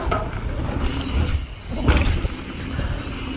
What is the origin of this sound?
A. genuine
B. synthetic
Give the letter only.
A